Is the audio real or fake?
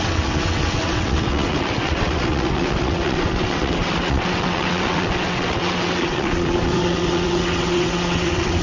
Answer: fake